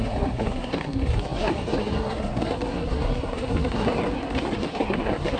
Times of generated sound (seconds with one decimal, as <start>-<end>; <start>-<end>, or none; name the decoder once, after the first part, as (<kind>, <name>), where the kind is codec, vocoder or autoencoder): 0.0-5.4 (codec, SNAC)